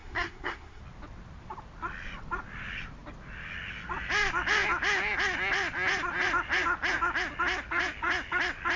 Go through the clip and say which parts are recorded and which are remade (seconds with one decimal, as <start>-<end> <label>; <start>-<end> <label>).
0.0-0.8 remade; 0.8-8.8 recorded